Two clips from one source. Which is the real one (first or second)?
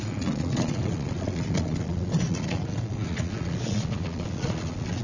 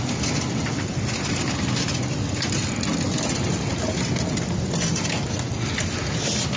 second